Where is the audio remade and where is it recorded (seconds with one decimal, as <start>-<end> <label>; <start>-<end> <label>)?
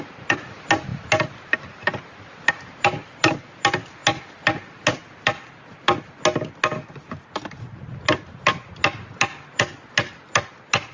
0.0-10.9 recorded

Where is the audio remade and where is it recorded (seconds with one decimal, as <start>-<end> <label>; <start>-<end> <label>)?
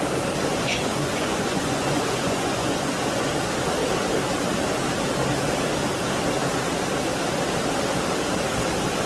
0.0-0.5 recorded; 0.5-3.3 remade; 3.3-9.1 recorded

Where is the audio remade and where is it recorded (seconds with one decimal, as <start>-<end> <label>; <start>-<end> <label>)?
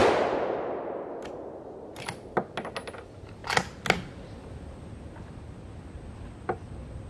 0.0-7.1 recorded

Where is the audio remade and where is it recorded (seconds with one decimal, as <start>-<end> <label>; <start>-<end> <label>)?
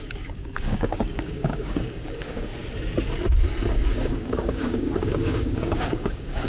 0.0-2.5 remade; 2.5-3.7 recorded; 3.7-6.5 remade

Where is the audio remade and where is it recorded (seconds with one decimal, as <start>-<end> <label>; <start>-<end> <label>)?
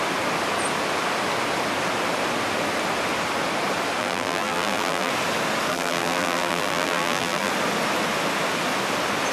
0.0-4.0 recorded; 4.0-5.1 remade; 5.1-5.7 recorded; 5.7-7.5 remade; 7.5-9.3 recorded